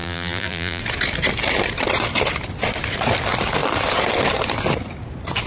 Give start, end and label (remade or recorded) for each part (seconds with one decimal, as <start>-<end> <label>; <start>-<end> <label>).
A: 0.0-0.8 remade; 0.8-5.5 recorded